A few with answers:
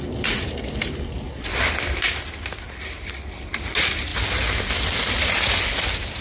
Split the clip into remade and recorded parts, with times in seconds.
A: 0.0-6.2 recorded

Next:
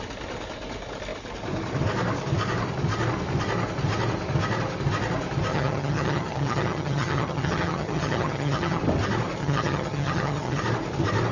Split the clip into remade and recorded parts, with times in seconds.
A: 0.0-5.5 recorded; 5.5-8.8 remade; 8.8-9.4 recorded; 9.4-10.6 remade; 10.6-11.3 recorded

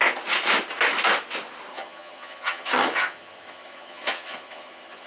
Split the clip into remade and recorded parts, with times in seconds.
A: 0.0-1.7 recorded; 1.7-5.1 remade

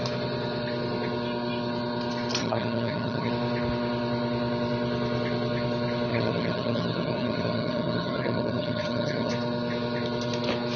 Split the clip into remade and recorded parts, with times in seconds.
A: 0.0-2.4 recorded; 2.4-3.3 remade; 3.3-6.1 recorded; 6.1-9.3 remade; 9.3-10.8 recorded

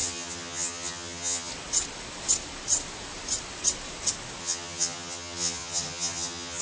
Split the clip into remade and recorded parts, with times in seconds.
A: 0.0-1.5 remade; 1.5-4.4 recorded; 4.4-6.6 remade